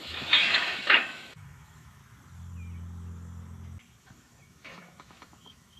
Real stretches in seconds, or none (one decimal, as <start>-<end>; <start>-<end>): 2.0-4.0